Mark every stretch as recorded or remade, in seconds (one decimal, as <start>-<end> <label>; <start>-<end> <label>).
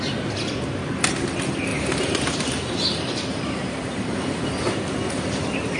0.0-1.7 recorded; 1.7-4.4 remade; 4.4-5.8 recorded